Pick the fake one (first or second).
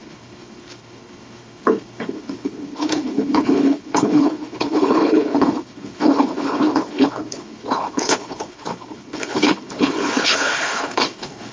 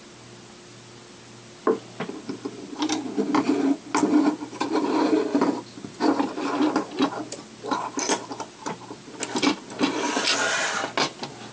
first